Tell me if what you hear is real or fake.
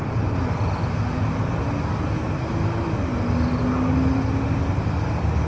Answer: real